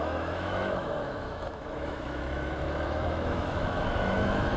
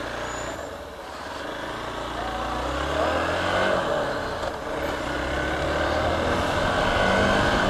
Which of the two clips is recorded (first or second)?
second